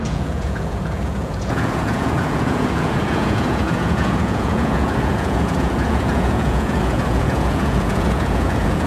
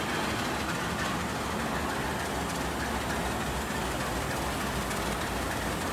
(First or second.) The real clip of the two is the second